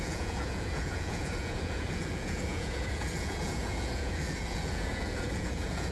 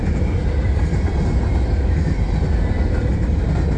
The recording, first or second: second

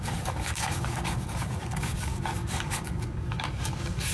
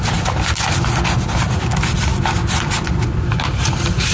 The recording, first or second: second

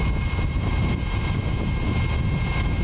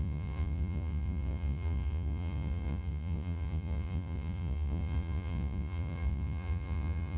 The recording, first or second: first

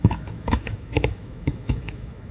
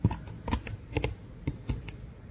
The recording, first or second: second